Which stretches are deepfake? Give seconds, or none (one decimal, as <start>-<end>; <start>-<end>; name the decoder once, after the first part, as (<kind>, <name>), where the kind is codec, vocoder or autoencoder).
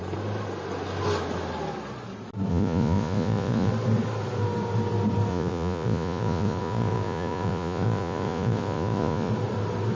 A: 2.5-3.7 (vocoder, Vocos); 5.3-9.3